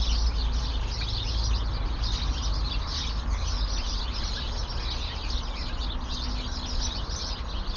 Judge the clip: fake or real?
real